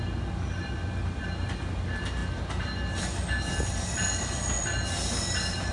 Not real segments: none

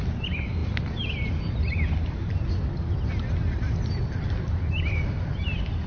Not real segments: none

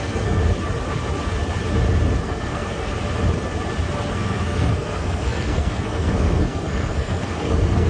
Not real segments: 0.0-0.4 (codec, SNAC); 2.2-2.9; 4.1-7.9

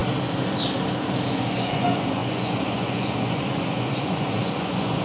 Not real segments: 1.3-5.0 (vocoder, Vocos)

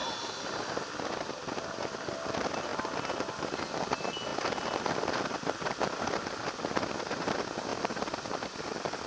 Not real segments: none